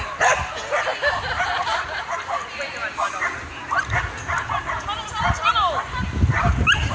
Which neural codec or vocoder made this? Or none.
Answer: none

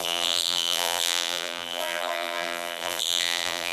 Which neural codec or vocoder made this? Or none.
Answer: vocoder, BigVGAN v2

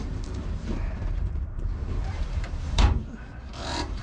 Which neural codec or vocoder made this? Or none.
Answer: vocoder, BigVGAN v2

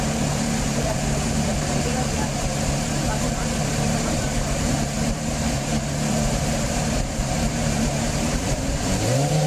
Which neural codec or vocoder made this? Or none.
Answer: vocoder, BigVGAN v2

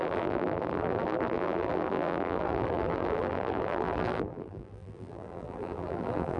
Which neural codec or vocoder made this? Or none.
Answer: vocoder, BigVGAN v2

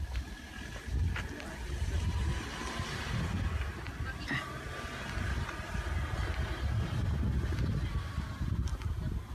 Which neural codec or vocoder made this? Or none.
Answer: none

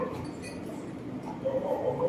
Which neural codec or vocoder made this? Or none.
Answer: none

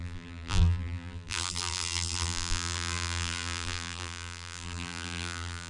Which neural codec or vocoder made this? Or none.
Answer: vocoder, BigVGAN v2